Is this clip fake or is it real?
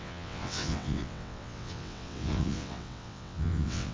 fake